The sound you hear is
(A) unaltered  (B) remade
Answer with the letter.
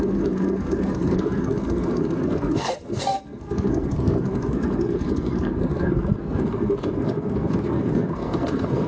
B